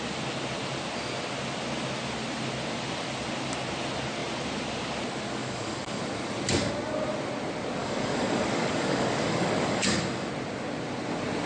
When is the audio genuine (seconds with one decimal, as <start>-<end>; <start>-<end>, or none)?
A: 0.0-5.4; 6.0-7.8; 10.3-11.5